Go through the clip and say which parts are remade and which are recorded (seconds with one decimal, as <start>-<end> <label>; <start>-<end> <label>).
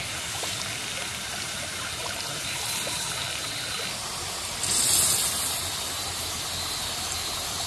0.0-7.7 recorded